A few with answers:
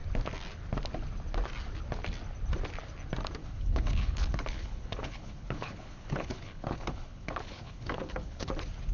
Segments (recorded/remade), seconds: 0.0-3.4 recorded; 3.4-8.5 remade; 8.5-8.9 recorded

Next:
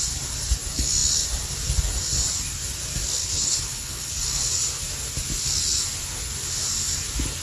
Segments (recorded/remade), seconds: 0.0-3.2 recorded; 3.2-4.1 remade; 4.1-7.4 recorded

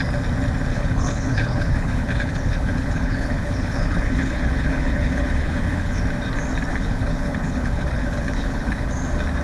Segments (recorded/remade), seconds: 0.0-0.7 recorded; 0.7-6.0 remade; 6.0-6.7 recorded; 6.7-8.9 remade; 8.9-9.4 recorded

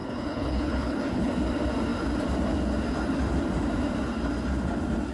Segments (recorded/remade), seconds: 0.0-1.3 remade; 1.3-5.1 recorded

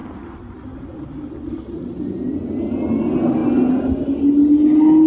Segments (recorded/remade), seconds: 0.0-5.1 recorded

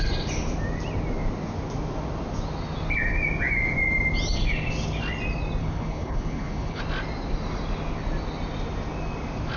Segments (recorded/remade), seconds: 0.0-5.6 recorded; 5.6-6.8 remade; 6.8-9.6 recorded